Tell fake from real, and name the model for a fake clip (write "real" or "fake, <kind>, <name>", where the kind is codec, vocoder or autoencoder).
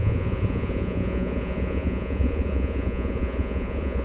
fake, vocoder, Vocos